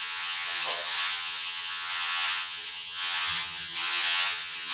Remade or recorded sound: remade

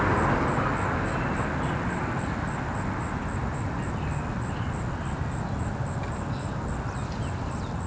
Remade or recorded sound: recorded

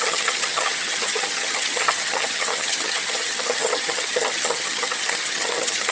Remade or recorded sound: remade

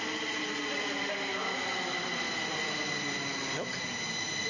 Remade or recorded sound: recorded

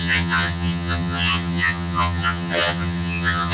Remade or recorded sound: remade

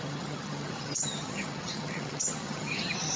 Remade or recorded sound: remade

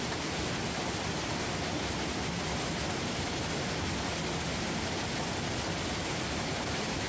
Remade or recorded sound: recorded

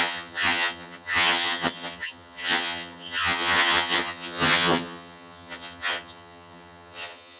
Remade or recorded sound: remade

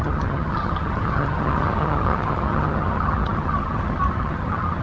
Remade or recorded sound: remade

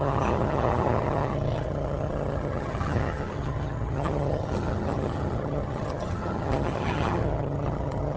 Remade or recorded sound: remade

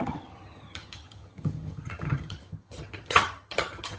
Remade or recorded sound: remade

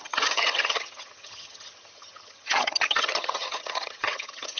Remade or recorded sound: remade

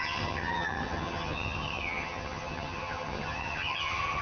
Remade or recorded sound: remade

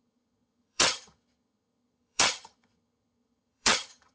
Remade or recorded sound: remade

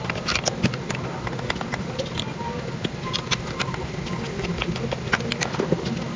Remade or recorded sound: recorded